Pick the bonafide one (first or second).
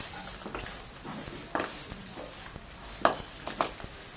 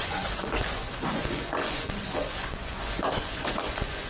first